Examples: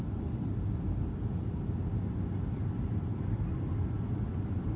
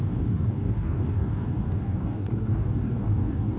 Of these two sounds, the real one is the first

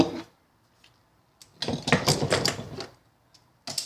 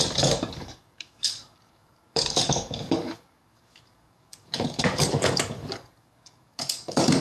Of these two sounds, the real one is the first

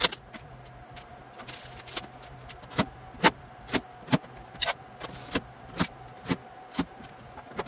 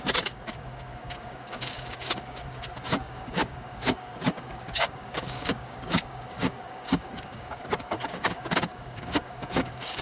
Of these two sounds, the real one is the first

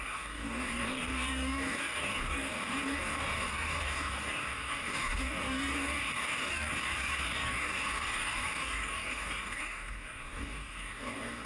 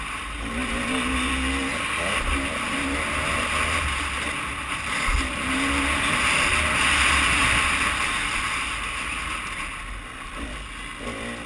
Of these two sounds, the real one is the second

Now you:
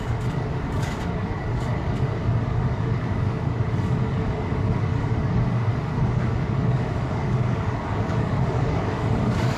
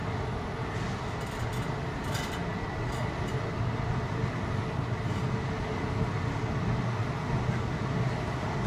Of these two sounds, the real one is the second